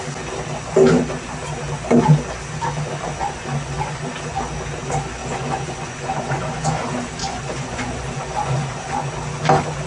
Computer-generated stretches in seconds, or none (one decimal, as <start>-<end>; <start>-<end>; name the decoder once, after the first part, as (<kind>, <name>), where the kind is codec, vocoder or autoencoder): 3.2-4.0 (vocoder, Vocos); 5.2-6.8; 7.2-9.1